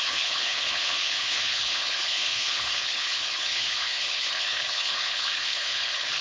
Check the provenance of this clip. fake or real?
fake